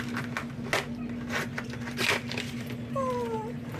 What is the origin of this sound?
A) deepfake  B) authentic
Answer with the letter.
B